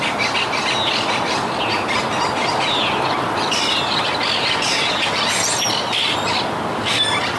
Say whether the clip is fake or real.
real